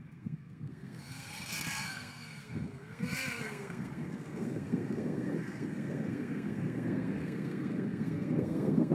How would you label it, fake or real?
fake